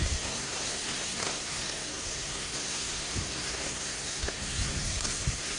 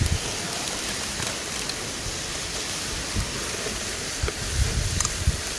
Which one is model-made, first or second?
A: first